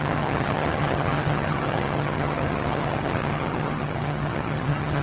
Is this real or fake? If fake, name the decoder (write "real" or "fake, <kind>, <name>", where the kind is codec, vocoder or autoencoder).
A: fake, vocoder, HiFi-GAN